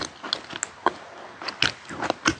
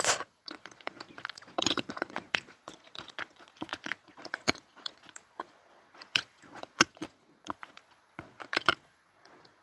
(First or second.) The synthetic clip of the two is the second